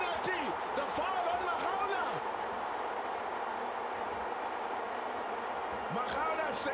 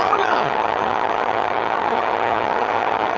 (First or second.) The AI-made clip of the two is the second